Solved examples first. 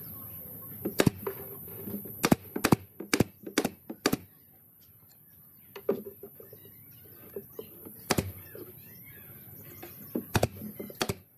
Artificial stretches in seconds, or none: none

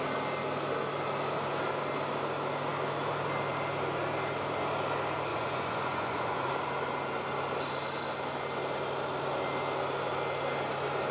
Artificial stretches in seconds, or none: 5.3-6.5 (vocoder, Vocos)

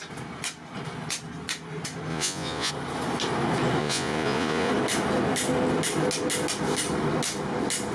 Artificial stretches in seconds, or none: 2.1-2.7 (vocoder, Vocos); 3.8-4.7

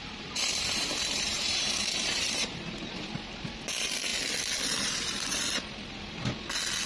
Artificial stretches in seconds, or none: 0.0-2.2 (vocoder, BigVGAN v2)